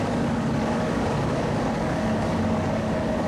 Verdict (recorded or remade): remade